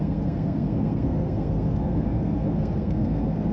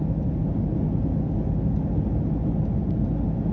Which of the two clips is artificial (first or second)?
first